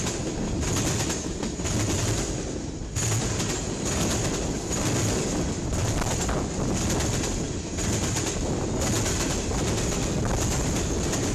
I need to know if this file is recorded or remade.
recorded